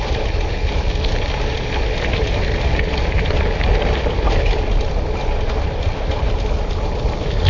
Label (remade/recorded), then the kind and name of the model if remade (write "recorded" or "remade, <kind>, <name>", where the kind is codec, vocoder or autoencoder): recorded